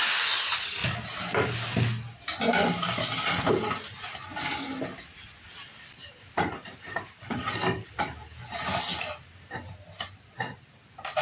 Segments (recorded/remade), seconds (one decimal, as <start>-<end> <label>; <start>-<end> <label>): 0.0-11.2 recorded